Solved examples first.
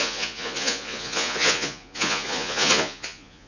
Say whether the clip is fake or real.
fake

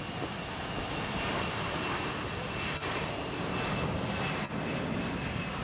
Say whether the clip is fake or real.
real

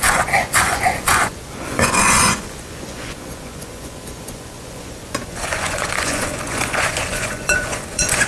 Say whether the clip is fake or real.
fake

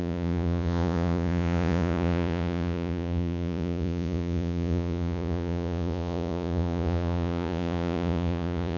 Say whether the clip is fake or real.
fake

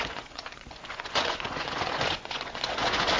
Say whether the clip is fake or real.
fake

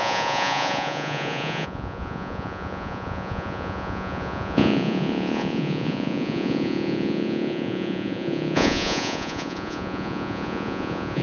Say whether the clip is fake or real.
fake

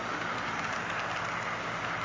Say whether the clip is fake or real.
real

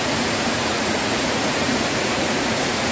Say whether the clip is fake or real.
fake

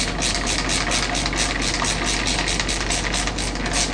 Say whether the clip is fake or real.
real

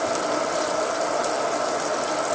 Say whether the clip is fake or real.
real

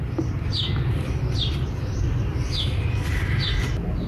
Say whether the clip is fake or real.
real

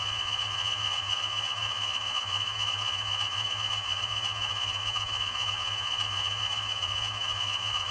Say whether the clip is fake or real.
fake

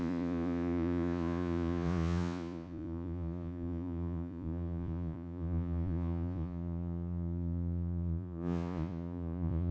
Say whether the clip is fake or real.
fake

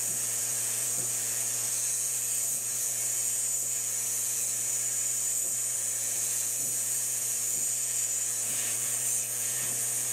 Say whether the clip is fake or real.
fake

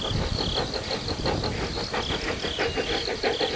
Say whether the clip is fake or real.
real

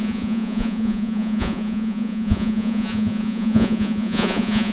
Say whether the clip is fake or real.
fake